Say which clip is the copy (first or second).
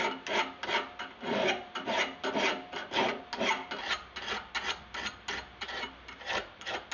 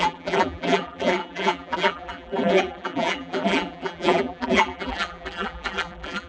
second